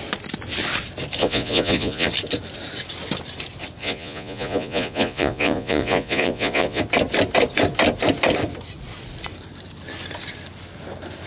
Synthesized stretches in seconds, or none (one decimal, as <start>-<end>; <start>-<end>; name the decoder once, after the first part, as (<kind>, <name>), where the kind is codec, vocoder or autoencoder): 1.2-2.1 (vocoder, Vocos); 3.8-6.8